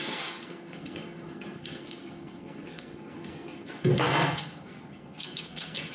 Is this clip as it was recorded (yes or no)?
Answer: no